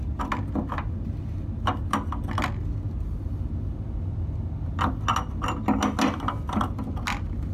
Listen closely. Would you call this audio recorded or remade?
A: recorded